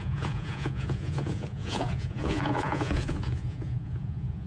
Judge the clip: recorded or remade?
remade